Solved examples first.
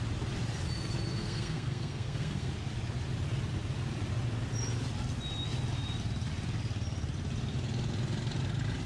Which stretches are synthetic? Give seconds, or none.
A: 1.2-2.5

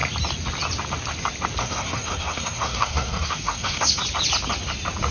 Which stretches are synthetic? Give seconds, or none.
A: 1.6-3.9

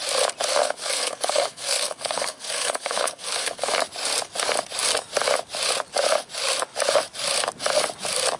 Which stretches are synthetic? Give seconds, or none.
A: 0.6-3.7

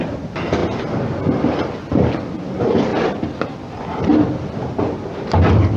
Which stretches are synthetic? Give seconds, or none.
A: none

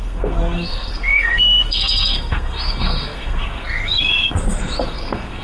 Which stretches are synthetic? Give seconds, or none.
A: 0.0-5.4